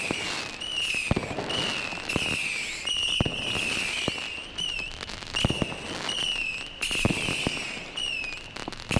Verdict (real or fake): real